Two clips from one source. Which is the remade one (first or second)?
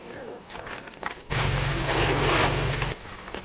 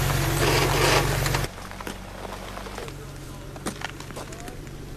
first